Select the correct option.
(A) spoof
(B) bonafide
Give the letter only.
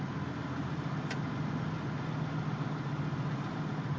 B